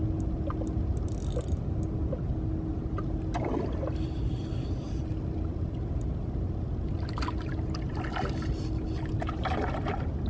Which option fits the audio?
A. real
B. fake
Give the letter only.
A